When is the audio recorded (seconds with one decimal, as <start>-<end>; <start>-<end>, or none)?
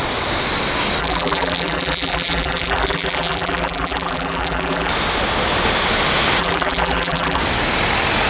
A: 0.0-1.0; 4.9-6.4; 7.4-8.3